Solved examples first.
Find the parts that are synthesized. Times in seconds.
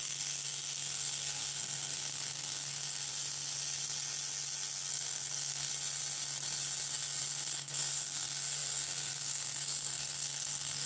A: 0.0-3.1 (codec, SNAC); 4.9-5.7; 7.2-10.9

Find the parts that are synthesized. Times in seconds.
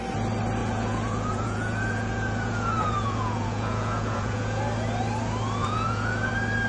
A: 0.6-4.6 (vocoder, Vocos); 5.6-6.3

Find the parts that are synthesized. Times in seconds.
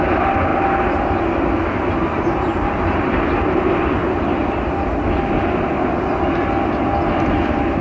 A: none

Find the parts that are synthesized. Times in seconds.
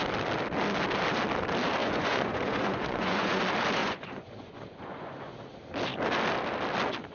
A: 1.8-3.4 (vocoder, Vocos); 3.8-5.4